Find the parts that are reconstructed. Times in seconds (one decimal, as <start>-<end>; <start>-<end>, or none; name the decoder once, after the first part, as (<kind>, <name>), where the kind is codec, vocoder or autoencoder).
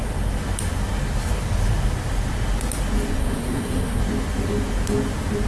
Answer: 3.2-4.0 (codec, SNAC)